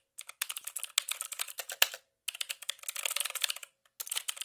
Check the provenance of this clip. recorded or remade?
recorded